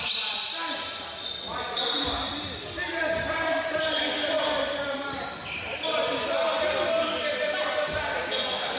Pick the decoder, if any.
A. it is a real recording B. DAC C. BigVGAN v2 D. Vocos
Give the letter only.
C